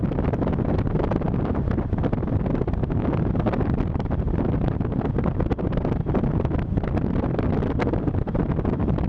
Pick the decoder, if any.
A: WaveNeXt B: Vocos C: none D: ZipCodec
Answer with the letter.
C